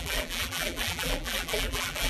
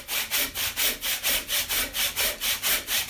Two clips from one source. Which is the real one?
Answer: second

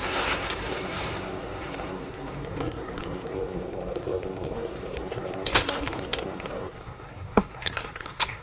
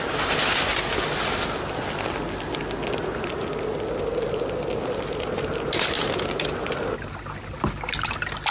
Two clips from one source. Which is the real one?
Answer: second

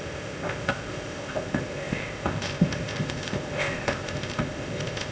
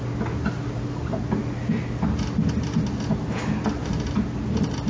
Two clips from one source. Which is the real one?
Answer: second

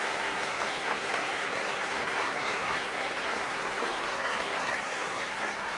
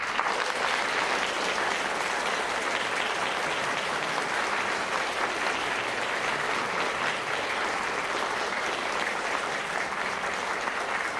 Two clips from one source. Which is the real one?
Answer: second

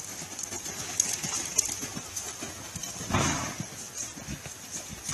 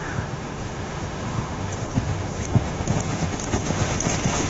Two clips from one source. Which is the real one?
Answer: first